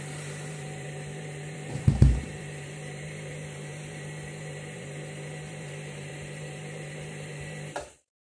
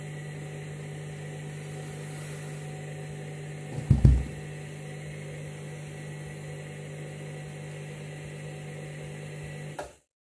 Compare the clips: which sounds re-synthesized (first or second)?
first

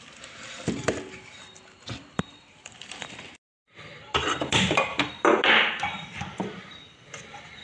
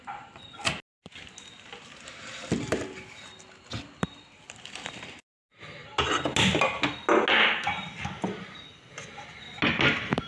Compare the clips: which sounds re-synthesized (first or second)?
first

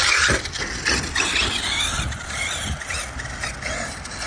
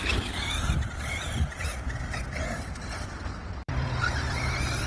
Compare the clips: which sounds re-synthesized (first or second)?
second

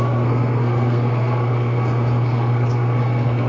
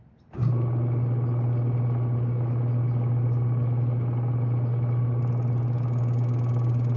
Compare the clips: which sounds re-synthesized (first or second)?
first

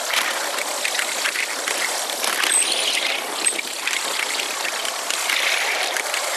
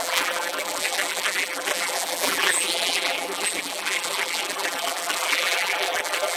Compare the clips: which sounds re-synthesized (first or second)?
second